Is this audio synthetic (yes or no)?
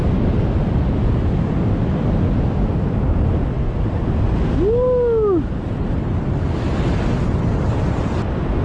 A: no